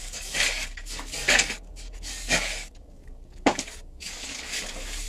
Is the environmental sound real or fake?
fake